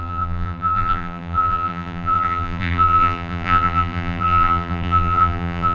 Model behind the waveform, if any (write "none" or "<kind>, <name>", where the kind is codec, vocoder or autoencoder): vocoder, BigVGAN v2